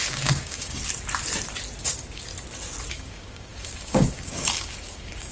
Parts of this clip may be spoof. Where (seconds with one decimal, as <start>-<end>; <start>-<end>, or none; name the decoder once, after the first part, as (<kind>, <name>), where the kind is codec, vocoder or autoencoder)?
0.0-0.8 (codec, DAC); 1.8-2.3; 2.9-5.3